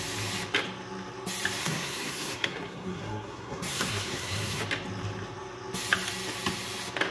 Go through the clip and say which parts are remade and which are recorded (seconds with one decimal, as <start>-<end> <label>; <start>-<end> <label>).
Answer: 0.0-1.6 recorded; 1.6-4.6 remade; 4.6-7.1 recorded